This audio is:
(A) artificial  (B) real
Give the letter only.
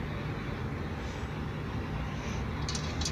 B